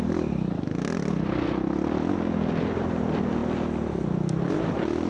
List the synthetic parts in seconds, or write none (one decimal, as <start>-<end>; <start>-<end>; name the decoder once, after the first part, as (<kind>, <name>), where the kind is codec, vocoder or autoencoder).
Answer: none